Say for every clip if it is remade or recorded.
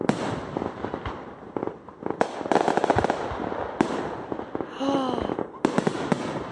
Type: recorded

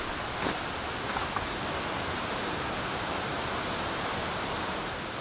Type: recorded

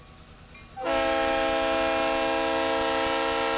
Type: recorded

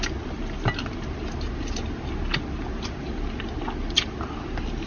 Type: recorded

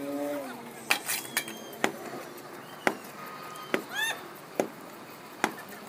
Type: recorded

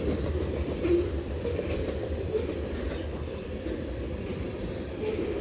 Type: remade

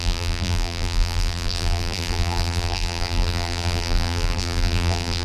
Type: remade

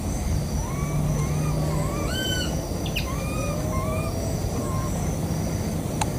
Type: recorded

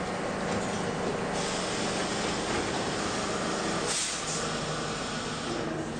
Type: recorded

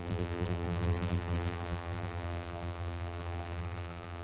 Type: remade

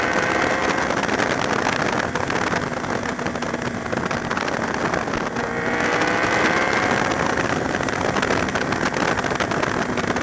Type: recorded